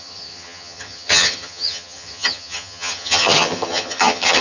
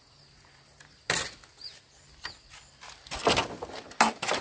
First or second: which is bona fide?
second